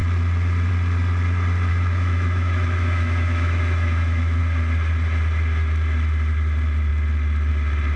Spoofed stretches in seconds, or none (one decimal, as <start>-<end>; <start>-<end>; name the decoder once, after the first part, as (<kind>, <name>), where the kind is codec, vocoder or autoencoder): 1.7-4.4 (autoencoder, DAC-VAE)